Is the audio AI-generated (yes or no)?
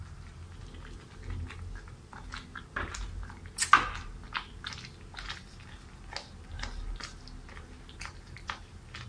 no